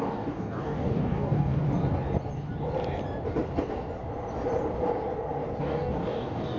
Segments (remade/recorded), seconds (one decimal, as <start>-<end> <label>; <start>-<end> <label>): 0.0-1.6 remade; 1.6-5.6 recorded; 5.6-6.6 remade